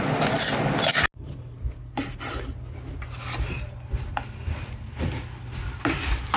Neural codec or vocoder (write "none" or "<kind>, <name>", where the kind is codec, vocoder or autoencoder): none